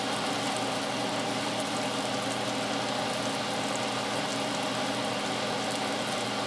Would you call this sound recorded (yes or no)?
yes